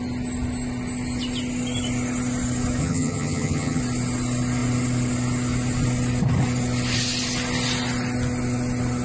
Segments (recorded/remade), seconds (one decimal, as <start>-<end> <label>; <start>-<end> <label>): 0.0-2.8 recorded; 2.8-3.8 remade; 3.8-9.0 recorded